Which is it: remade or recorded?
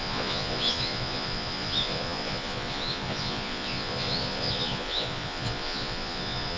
remade